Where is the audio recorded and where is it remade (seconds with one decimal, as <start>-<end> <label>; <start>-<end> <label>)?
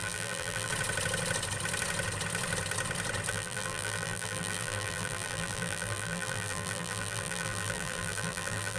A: 0.0-0.7 remade; 0.7-3.3 recorded; 3.3-8.8 remade